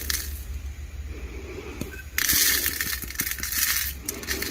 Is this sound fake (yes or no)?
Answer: no